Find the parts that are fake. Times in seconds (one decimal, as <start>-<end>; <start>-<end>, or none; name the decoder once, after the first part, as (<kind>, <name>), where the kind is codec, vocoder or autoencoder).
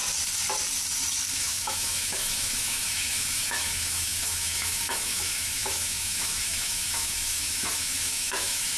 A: 1.3-8.8 (autoencoder, DAC-VAE)